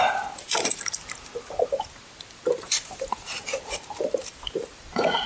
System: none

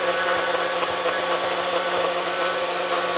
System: none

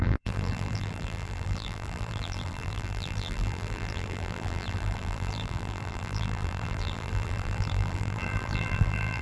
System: vocoder, BigVGAN v2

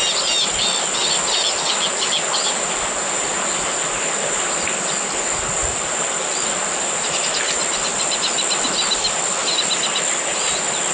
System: none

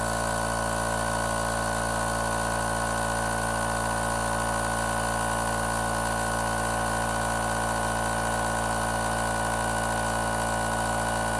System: none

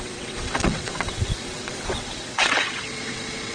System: vocoder, WaveNeXt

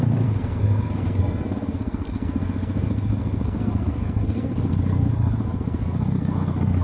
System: codec, SNAC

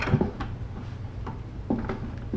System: none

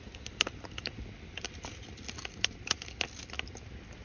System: none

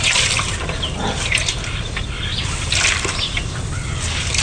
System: vocoder, BigVGAN v2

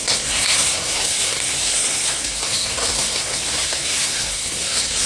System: codec, SNAC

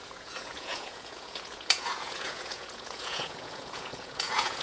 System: vocoder, Vocos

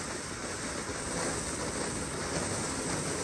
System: none